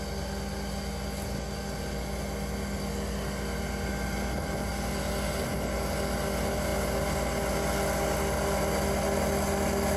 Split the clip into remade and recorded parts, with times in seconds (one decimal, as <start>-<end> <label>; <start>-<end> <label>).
0.0-10.0 recorded